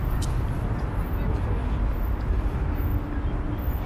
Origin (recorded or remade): recorded